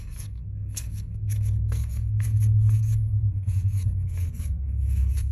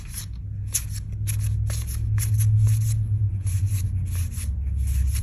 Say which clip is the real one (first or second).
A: second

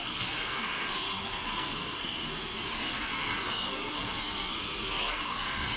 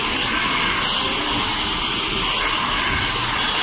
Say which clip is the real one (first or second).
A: second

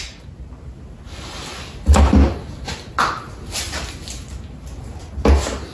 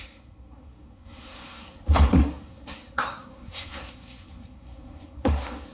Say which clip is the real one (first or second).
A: first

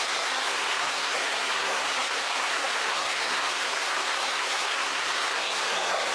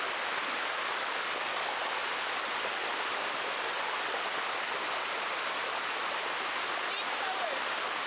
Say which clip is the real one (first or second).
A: second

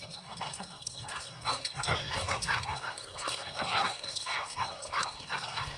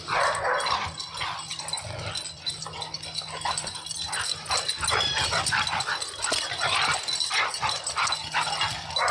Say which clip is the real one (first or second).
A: second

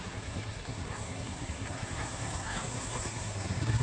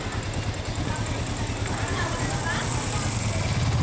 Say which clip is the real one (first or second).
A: second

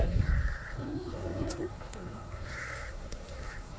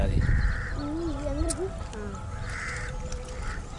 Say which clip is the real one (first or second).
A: second